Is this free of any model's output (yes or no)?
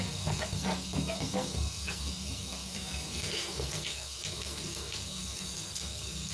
no